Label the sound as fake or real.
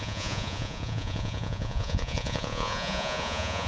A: fake